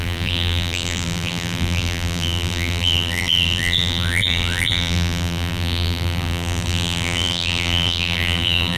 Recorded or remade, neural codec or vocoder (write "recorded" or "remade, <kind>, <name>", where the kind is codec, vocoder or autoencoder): remade, vocoder, BigVGAN v2